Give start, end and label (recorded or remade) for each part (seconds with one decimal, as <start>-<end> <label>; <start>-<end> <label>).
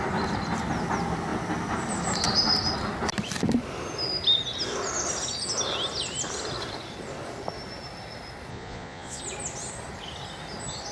0.0-8.5 recorded; 8.5-9.2 remade; 9.2-10.9 recorded